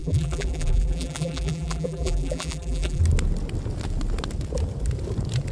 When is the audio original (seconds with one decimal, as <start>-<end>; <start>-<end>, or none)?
3.0-5.5